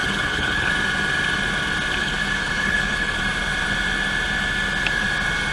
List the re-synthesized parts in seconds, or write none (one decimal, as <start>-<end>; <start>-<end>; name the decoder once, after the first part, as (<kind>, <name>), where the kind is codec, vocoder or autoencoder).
0.0-0.7 (codec, HILCodec); 2.0-3.2